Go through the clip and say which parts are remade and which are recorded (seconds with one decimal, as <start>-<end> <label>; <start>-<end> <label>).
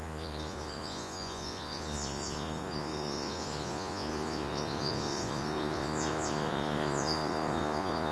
0.0-8.1 remade